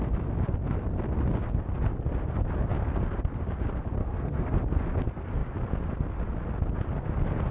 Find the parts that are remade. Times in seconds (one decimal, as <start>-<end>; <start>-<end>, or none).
4.0-4.6

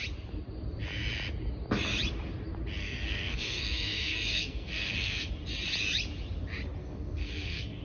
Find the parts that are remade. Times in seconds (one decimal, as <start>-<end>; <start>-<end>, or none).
2.8-5.3; 6.8-7.8

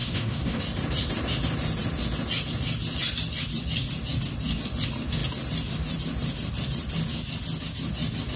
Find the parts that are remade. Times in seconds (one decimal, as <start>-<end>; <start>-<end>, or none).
0.0-0.6

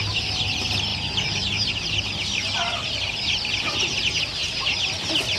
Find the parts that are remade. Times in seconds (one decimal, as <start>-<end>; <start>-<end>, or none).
none

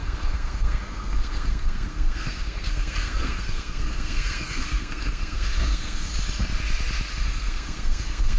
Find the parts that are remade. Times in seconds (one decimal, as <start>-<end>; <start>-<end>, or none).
0.0-6.1; 7.1-8.4

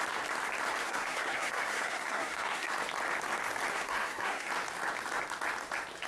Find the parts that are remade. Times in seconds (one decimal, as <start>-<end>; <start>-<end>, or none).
0.8-2.7; 3.7-4.5

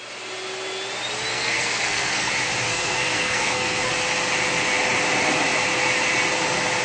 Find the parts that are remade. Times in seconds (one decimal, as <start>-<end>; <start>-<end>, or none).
1.3-2.3; 2.7-3.9